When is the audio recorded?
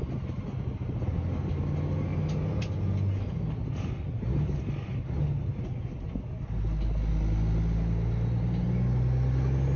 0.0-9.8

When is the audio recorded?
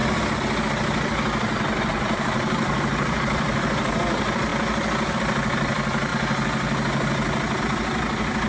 0.0-1.8; 4.5-5.1; 6.1-7.6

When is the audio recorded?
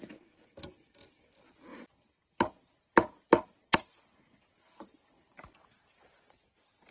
0.0-6.9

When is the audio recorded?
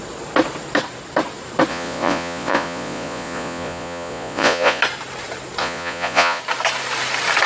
0.0-1.7; 4.8-5.6; 6.4-7.5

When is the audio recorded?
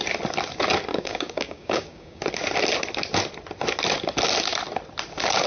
0.0-0.9; 2.2-5.5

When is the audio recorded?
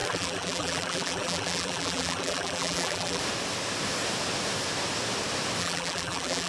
3.2-5.6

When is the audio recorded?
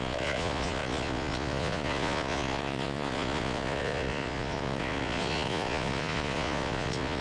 none